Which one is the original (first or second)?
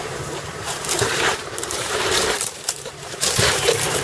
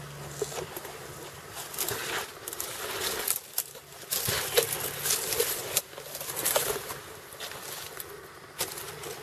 second